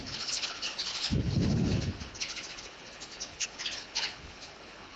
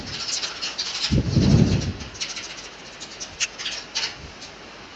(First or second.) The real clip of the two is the second